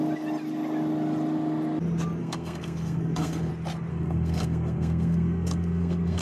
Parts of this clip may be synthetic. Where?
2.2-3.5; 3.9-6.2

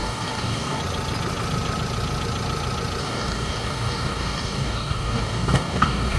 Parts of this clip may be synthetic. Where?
0.0-0.8; 3.0-6.2

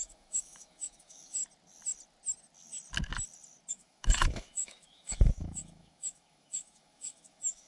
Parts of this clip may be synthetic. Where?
0.0-1.4; 3.7-7.7

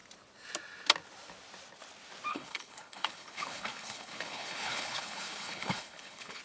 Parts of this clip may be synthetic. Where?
2.3-6.4

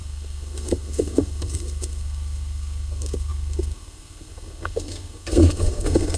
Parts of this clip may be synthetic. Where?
0.0-6.2